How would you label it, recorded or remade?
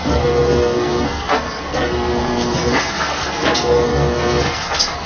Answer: remade